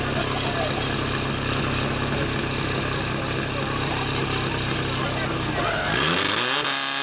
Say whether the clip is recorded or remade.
recorded